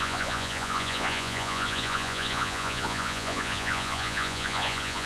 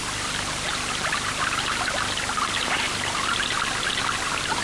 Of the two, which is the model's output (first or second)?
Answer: first